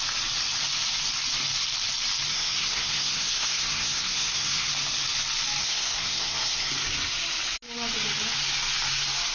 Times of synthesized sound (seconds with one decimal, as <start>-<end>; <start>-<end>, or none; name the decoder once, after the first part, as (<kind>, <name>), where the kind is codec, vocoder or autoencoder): 2.3-4.7 (codec, SNAC); 5.6-6.7

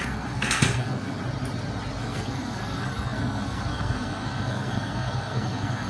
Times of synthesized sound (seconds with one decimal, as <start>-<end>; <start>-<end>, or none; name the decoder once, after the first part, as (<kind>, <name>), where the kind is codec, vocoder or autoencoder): 0.0-1.2 (codec, SNAC); 2.0-5.9

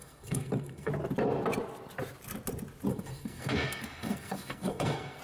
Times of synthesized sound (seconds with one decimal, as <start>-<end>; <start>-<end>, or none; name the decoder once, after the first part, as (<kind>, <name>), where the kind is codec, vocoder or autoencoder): 0.0-0.9 (codec, SNAC); 2.9-5.2

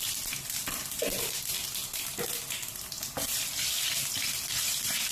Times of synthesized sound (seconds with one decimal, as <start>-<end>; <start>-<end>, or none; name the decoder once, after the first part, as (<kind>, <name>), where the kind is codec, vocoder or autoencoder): none

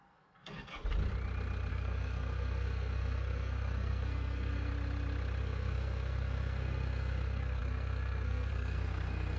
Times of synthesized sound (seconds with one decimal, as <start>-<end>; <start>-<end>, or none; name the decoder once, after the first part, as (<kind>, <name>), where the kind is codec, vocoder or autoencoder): 0.0-0.8 (codec, SNAC); 1.7-4.7; 5.4-9.4

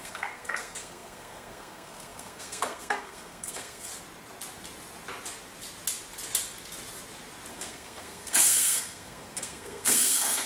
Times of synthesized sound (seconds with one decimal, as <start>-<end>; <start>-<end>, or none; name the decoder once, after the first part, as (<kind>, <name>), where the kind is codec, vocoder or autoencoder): 0.0-3.9 (codec, SNAC); 7.5-10.5

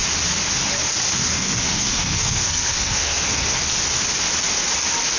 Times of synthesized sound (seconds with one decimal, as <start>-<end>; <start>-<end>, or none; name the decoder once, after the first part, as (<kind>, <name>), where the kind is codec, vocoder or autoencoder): 1.1-3.6 (codec, SNAC)

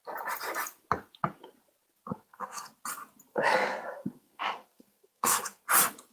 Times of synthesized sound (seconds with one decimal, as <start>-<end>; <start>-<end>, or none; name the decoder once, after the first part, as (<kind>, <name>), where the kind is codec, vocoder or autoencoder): 2.1-2.7 (codec, SNAC); 3.3-5.6